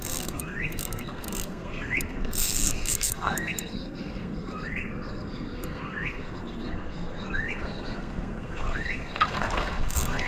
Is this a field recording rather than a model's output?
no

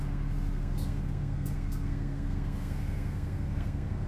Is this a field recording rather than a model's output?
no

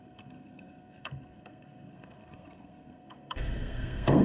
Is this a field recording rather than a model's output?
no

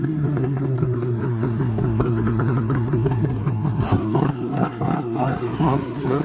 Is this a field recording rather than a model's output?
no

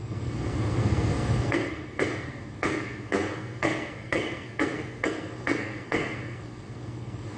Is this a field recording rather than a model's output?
no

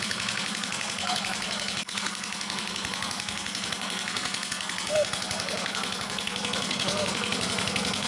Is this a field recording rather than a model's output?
no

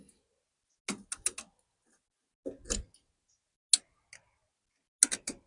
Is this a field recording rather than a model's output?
yes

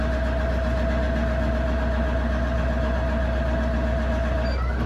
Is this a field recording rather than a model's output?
yes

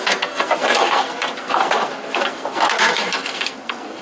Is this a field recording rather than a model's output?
no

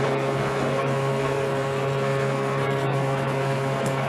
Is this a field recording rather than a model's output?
no